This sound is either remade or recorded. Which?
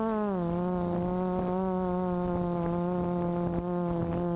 recorded